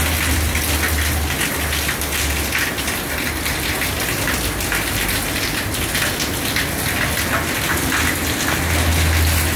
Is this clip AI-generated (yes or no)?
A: no